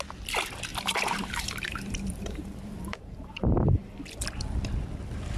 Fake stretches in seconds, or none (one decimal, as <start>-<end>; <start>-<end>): 0.7-3.9